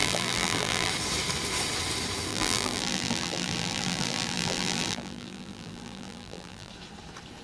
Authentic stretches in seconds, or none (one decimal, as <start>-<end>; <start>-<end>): 0.9-2.3; 6.7-7.4